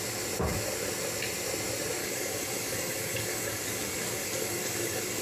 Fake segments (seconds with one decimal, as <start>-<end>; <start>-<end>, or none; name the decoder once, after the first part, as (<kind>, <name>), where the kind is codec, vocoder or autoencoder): 2.0-5.2 (codec, DAC)